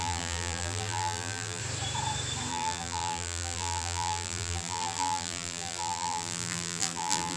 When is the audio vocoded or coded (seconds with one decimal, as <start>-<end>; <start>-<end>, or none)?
0.0-1.6; 2.5-7.4